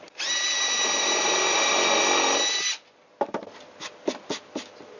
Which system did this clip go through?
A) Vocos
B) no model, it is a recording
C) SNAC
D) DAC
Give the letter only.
B